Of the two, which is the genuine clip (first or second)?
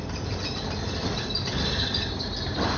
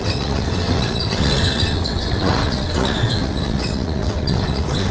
first